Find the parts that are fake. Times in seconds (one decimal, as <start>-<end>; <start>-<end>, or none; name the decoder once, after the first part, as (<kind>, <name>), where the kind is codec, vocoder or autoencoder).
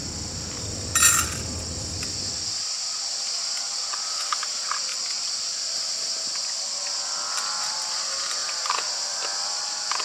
8.4-9.2 (vocoder, BigVGAN v2)